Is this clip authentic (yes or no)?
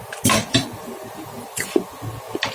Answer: yes